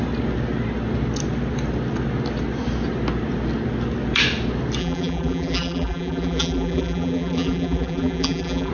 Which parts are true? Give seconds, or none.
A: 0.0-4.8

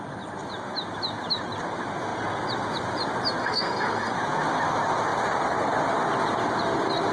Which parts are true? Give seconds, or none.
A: 0.0-3.4; 4.1-7.1

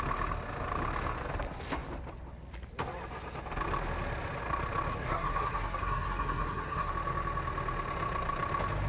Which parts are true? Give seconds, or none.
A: 0.0-4.9; 6.9-8.9

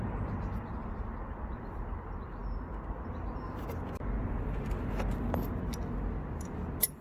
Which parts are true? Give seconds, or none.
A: 0.0-7.0

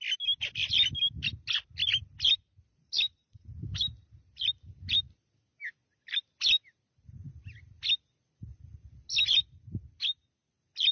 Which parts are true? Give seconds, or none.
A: 0.0-10.9

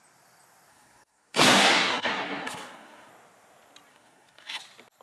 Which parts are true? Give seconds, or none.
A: 0.0-0.7; 3.1-3.9; 4.6-5.0

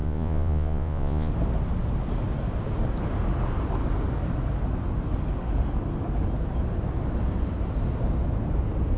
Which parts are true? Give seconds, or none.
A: 1.3-9.0